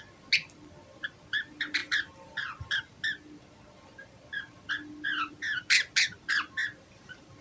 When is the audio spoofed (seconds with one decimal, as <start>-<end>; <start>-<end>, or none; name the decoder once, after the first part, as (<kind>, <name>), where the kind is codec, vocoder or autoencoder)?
none

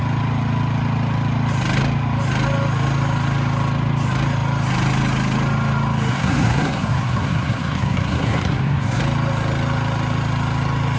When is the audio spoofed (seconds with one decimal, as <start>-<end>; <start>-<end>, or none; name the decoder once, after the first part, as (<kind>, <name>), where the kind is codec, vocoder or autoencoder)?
6.1-9.0 (codec, SNAC)

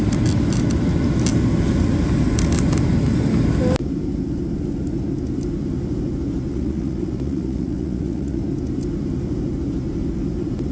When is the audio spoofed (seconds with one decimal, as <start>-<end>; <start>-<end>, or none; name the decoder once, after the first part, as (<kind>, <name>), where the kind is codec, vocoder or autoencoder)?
6.5-8.4 (vocoder, Vocos)

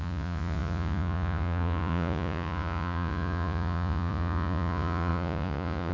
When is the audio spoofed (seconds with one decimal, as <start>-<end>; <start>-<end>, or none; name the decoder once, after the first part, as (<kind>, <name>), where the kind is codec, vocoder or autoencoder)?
0.0-5.9 (vocoder, Vocos)

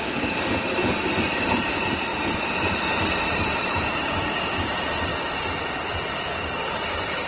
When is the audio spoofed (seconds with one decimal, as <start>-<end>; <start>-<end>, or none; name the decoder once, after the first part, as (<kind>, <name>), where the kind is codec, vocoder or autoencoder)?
0.0-5.1 (vocoder, BigVGAN v2); 6.6-7.3

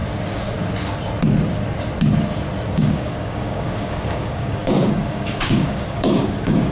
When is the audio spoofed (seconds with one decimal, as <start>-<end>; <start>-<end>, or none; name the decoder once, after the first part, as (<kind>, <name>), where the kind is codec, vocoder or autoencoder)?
2.7-6.7 (codec, DAC)

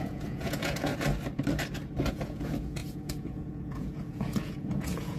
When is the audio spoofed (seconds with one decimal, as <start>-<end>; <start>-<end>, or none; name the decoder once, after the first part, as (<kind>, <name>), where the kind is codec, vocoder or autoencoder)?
0.0-0.9 (vocoder, Vocos); 2.1-5.2